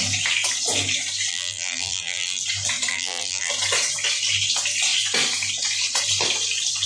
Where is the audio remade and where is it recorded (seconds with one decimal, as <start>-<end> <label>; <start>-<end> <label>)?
0.0-1.3 recorded; 1.3-2.4 remade; 2.4-2.9 recorded; 2.9-3.5 remade; 3.5-6.9 recorded